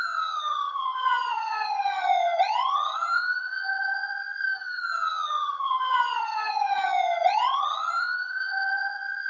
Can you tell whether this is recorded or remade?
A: remade